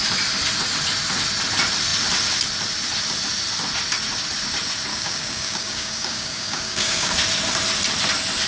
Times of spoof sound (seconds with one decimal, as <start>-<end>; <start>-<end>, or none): 4.9-7.1